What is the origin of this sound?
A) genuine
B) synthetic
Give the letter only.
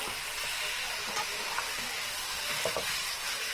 A